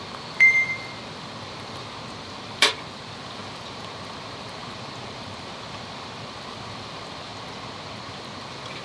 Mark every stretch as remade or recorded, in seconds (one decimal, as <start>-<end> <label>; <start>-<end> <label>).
0.0-7.3 remade; 7.3-8.4 recorded; 8.4-8.8 remade